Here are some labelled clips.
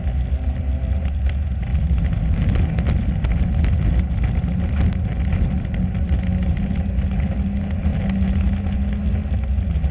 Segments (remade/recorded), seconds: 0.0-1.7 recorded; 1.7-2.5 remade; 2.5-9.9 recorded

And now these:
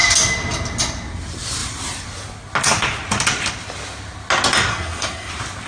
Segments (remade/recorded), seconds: 0.0-4.7 recorded; 4.7-5.3 remade; 5.3-5.7 recorded

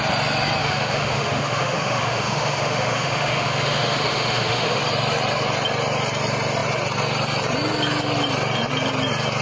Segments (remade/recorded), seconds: 0.0-0.6 recorded; 0.6-4.8 remade; 4.8-9.4 recorded

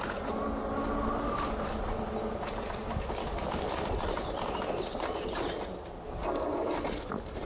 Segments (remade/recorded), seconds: 0.0-3.2 recorded; 3.2-3.9 remade; 3.9-7.5 recorded

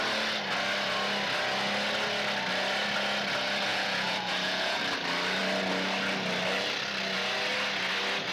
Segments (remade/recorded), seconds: 0.0-3.7 recorded; 3.7-4.8 remade; 4.8-8.3 recorded

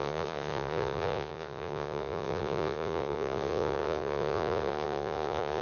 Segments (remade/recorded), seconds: 0.0-5.6 remade

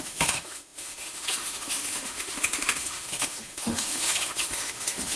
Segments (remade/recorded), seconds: 0.0-5.2 remade

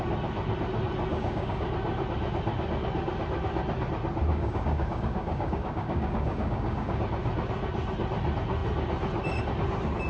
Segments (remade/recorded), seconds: 0.0-1.1 recorded; 1.1-1.7 remade; 1.7-4.3 recorded; 4.3-7.0 remade; 7.0-10.1 recorded